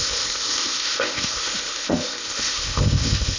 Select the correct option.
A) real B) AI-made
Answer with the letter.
B